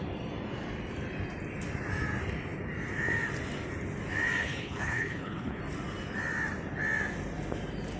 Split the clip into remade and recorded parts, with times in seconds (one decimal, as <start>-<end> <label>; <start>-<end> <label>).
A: 0.0-4.4 recorded; 4.4-5.6 remade; 5.6-8.0 recorded